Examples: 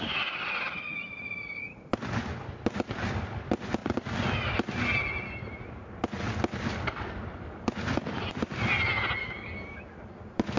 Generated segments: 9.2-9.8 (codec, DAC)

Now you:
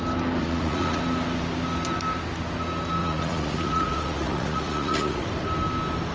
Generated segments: 0.4-1.0 (vocoder, Vocos); 3.0-5.2

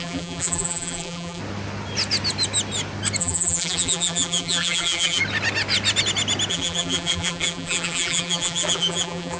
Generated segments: 0.0-1.4 (vocoder, BigVGAN v2); 3.2-5.2; 6.5-9.4